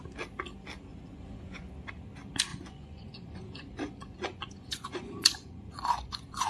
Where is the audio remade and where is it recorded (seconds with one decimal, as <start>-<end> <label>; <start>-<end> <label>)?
0.0-0.9 recorded; 0.9-1.7 remade; 1.7-2.5 recorded; 2.5-6.5 remade